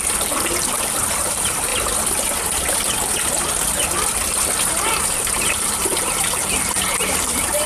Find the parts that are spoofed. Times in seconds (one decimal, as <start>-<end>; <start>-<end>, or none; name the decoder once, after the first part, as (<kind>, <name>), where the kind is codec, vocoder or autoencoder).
0.0-1.7 (vocoder, BigVGAN v2); 4.8-7.7